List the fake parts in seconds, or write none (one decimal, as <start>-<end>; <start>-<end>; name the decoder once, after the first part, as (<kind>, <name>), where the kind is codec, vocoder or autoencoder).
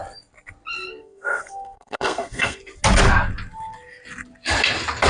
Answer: 1.0-2.6 (codec, SNAC)